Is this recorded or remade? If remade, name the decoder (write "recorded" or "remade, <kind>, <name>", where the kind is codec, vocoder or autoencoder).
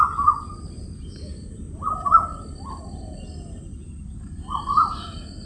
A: recorded